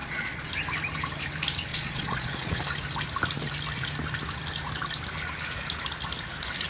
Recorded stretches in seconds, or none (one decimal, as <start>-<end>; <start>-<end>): 0.5-1.7; 2.6-6.7